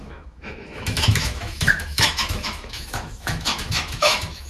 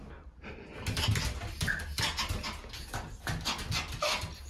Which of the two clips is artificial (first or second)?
first